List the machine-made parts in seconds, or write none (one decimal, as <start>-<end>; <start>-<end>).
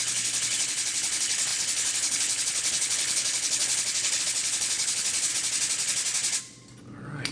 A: 0.0-5.3